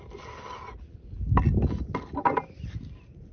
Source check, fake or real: real